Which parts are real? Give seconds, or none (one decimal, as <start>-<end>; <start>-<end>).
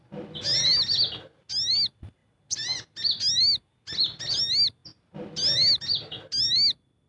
0.0-7.1